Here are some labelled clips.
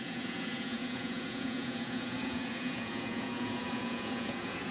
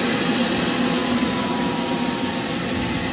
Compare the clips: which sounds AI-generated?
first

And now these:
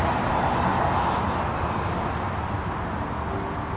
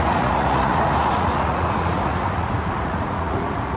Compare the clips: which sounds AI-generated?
second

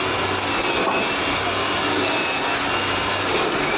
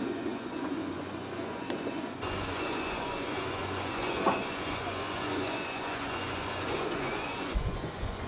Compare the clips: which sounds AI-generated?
second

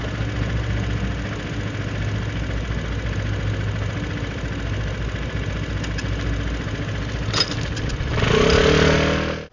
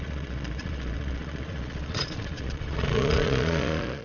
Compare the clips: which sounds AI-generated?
second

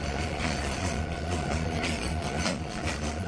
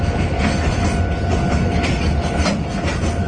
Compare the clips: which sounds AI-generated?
first